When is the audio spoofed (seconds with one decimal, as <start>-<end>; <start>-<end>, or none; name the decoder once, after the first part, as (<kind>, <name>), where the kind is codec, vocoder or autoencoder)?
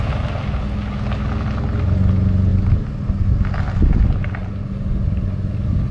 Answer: none